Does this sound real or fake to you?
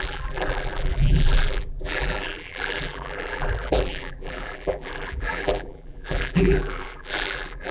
fake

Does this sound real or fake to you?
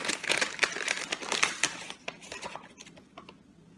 fake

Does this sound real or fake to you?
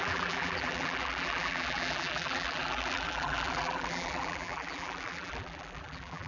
fake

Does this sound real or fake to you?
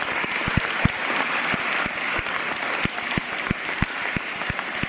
fake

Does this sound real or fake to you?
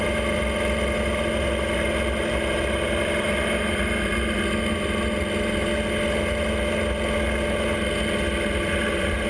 real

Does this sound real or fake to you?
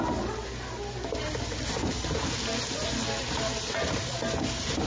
real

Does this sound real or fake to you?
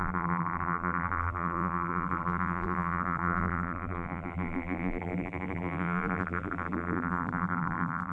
fake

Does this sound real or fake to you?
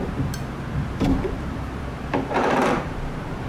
fake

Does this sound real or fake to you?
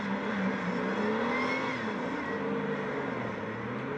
real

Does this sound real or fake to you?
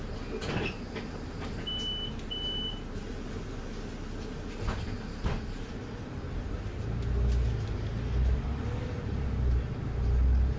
real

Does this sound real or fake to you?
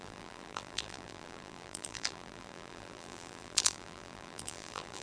fake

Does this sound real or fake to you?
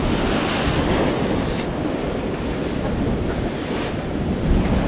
real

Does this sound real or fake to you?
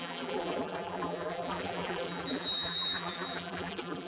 fake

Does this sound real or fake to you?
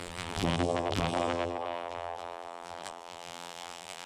fake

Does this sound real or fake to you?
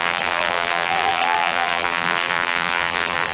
fake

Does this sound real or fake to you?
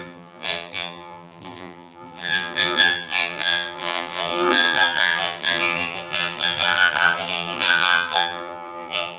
fake